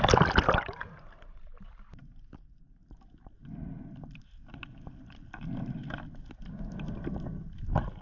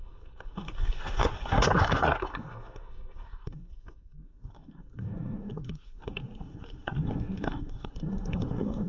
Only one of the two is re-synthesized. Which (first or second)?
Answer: second